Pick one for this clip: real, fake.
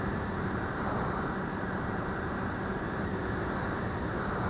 fake